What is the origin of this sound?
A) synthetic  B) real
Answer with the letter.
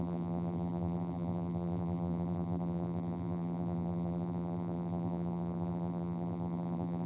A